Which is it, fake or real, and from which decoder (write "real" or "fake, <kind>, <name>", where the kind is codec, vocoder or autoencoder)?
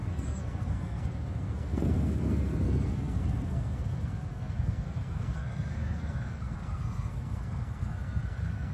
fake, codec, SNAC